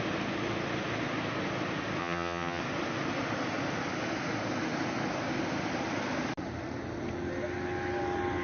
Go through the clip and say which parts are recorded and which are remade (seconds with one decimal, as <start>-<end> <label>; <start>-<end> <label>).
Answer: 0.0-2.0 recorded; 2.0-2.6 remade; 2.6-8.4 recorded

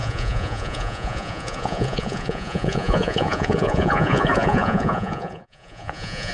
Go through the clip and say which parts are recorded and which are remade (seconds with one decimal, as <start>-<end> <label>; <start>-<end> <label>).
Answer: 0.0-6.3 remade

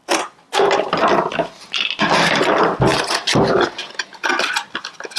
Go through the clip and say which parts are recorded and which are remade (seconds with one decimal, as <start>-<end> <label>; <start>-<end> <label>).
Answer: 0.0-5.2 recorded

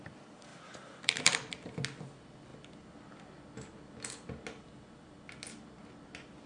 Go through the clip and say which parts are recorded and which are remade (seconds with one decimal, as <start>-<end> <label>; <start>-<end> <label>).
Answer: 0.0-0.5 recorded; 0.5-1.7 remade; 1.7-6.5 recorded

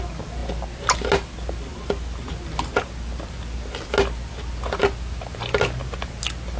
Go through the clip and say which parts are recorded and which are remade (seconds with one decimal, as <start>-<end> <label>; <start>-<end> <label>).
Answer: 0.0-6.6 recorded